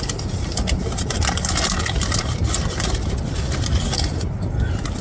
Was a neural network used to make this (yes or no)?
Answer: no